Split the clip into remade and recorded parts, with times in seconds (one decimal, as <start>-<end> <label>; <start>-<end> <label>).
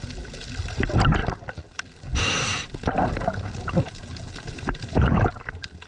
0.0-5.9 recorded